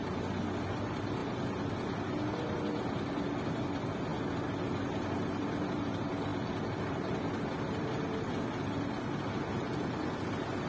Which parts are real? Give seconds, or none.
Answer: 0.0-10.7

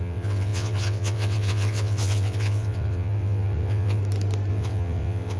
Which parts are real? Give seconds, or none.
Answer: 4.0-4.5

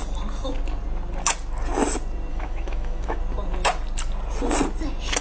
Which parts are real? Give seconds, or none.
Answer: 0.0-2.3; 3.2-5.2

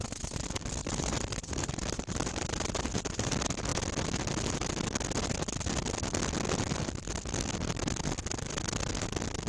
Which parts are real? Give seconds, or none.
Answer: 0.0-0.8; 3.3-9.5

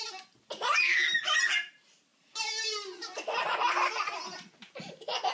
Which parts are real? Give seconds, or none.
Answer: 0.0-5.3

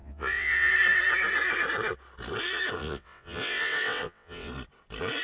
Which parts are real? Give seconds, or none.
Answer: 0.7-2.8; 4.5-5.2

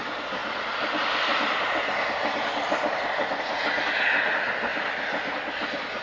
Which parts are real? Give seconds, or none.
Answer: 0.0-0.4; 3.4-4.7; 5.6-6.0

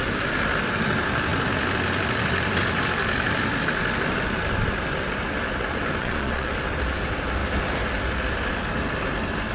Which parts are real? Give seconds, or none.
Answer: 0.0-6.0; 6.5-9.5